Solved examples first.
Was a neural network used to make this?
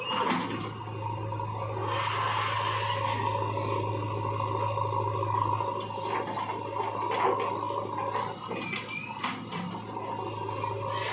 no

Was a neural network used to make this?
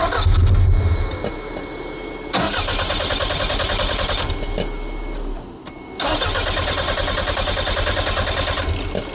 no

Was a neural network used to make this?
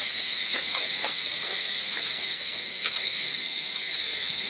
yes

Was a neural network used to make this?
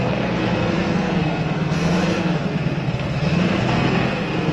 yes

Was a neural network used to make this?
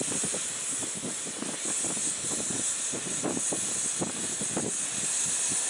no